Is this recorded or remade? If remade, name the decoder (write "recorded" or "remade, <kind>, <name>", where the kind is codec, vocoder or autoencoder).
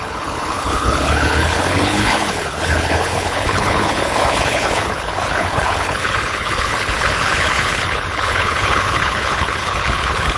remade, codec, HILCodec